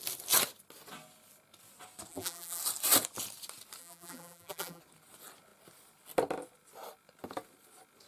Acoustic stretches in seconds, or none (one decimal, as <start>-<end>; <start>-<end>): 0.0-2.1; 2.6-3.8; 4.8-8.1